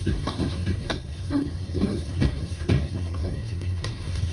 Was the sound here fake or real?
fake